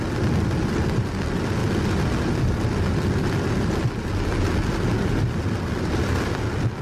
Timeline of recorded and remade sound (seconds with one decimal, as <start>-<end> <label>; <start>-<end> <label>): 0.0-6.8 recorded